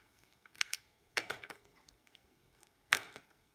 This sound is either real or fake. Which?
fake